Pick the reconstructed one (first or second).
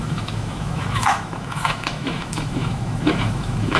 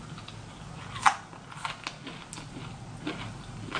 first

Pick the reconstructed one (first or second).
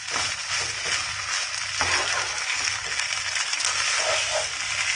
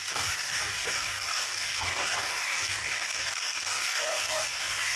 second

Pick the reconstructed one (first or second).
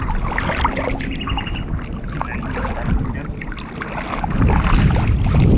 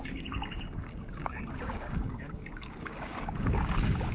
second